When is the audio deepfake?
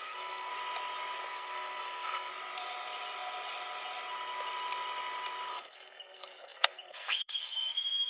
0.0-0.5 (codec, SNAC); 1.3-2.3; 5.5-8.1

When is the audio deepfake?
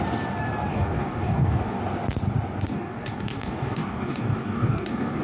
0.7-1.8 (codec, DAC); 2.7-5.2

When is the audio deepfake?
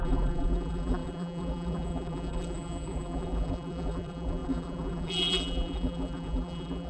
0.0-6.9 (vocoder, BigVGAN v2)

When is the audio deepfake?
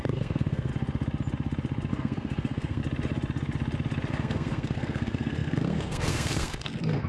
0.0-0.7 (codec, SNAC); 1.9-2.8; 4.1-7.1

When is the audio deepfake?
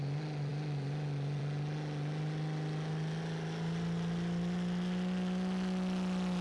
none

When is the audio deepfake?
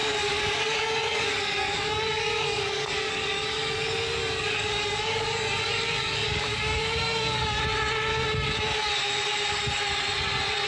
0.0-3.7 (codec, DAC); 4.2-7.6; 8.1-8.9